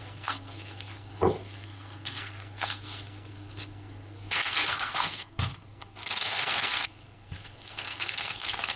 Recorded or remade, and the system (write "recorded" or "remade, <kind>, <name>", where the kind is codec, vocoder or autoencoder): remade, codec, SNAC